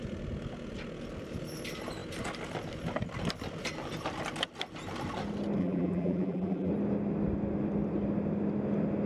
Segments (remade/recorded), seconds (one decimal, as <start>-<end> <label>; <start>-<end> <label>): 0.0-5.6 recorded; 5.6-6.7 remade; 6.7-9.1 recorded